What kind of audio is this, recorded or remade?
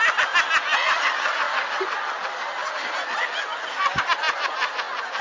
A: recorded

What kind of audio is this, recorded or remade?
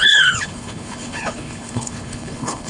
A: remade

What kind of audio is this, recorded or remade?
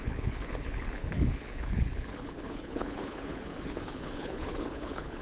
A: remade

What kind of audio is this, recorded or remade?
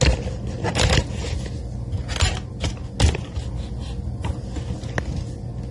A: recorded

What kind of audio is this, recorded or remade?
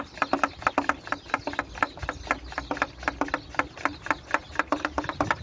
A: recorded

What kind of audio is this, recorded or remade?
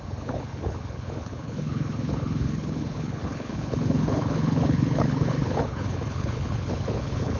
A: remade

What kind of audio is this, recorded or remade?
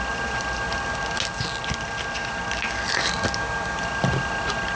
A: recorded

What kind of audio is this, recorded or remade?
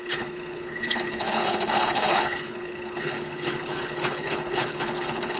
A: remade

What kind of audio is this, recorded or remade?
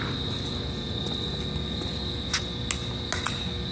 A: recorded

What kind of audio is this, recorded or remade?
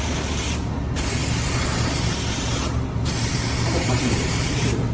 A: recorded